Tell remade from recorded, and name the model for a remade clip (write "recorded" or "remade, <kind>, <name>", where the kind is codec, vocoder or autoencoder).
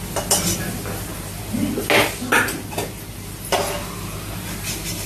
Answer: recorded